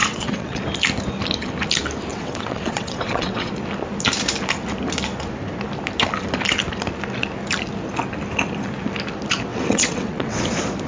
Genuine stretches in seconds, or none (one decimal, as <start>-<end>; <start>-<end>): 0.6-2.1; 3.5-9.5; 10.4-10.9